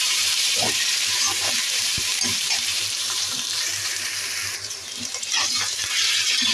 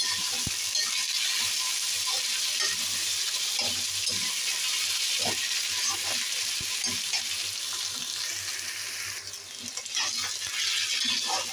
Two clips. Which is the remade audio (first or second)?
first